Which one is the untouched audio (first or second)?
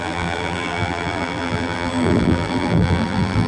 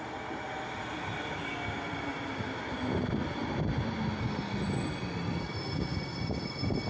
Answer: second